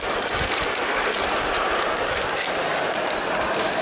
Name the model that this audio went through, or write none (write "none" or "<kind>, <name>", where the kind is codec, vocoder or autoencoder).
none